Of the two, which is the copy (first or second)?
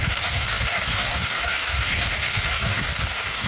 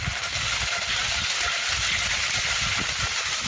first